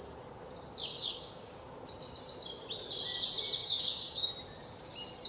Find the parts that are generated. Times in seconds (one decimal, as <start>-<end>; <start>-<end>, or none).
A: 0.9-1.5; 3.6-4.3